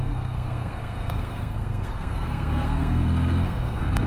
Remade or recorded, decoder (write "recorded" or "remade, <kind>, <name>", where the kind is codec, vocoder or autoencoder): remade, codec, SNAC